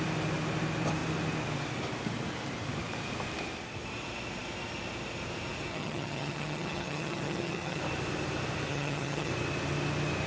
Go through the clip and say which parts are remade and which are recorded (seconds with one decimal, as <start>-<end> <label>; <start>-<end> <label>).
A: 0.0-5.7 recorded; 5.7-7.8 remade; 7.8-8.7 recorded; 8.7-9.3 remade; 9.3-10.3 recorded